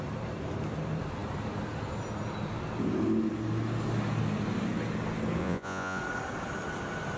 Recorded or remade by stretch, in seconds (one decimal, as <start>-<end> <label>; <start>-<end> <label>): 0.0-5.4 recorded; 5.4-6.0 remade; 6.0-7.2 recorded